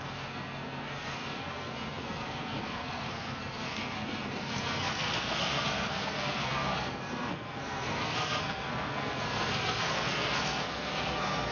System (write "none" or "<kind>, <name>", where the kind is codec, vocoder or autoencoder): codec, SNAC